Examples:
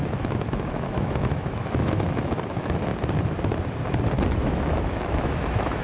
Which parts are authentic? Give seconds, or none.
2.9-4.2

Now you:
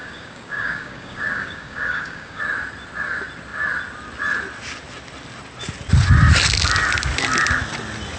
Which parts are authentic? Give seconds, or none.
2.4-8.2

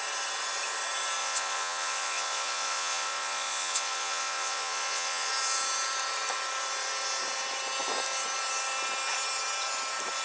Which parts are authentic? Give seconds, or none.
0.0-1.2; 5.3-10.2

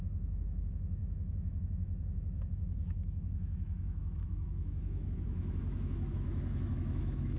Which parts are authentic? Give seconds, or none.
none